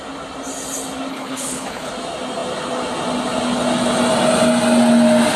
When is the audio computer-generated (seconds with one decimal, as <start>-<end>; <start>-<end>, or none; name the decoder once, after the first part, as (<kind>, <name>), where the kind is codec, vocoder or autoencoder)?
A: 1.1-1.9 (codec, HILCodec)

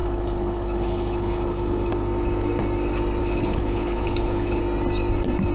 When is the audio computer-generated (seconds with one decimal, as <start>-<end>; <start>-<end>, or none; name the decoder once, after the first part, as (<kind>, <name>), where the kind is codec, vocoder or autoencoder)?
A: 0.0-1.9 (codec, HILCodec); 3.2-4.6